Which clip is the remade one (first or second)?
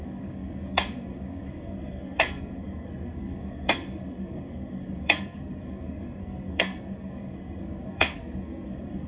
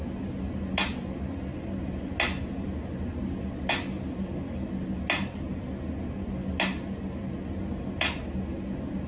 first